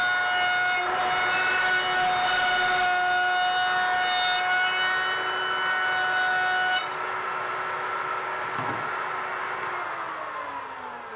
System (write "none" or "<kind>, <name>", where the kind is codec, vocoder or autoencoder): none